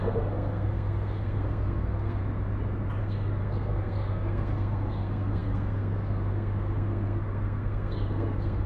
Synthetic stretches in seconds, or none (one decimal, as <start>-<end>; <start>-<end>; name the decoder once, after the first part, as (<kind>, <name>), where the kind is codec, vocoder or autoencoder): 0.0-2.2 (codec, SNAC); 3.0-8.7

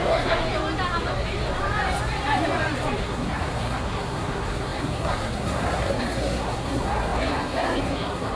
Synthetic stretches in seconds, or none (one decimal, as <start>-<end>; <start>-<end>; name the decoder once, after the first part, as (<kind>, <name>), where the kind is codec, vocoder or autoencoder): 0.0-0.4 (codec, SNAC); 3.0-8.4